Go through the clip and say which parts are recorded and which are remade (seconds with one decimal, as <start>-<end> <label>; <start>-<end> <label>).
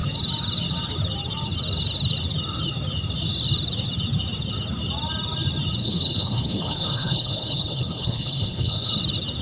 0.0-5.8 recorded; 5.8-9.0 remade; 9.0-9.4 recorded